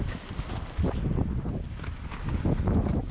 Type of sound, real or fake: real